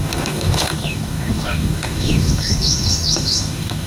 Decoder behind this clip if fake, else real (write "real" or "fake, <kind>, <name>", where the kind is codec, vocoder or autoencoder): fake, codec, DAC